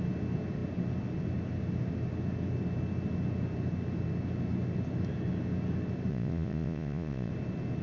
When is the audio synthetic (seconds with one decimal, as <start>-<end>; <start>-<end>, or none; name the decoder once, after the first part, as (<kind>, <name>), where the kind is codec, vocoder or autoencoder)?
6.1-7.3 (vocoder, Vocos)